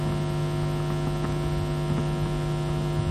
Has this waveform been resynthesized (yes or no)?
no